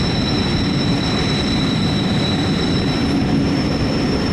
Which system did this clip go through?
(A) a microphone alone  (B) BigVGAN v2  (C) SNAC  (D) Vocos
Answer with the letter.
B